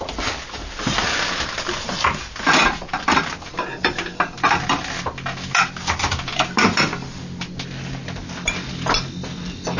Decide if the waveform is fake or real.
real